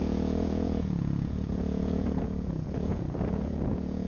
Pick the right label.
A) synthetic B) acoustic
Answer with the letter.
A